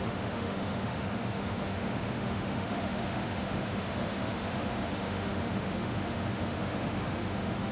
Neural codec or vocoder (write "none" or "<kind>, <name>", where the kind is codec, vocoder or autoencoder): autoencoder, DAC-VAE